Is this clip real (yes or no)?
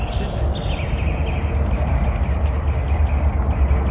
yes